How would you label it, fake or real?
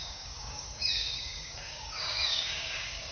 fake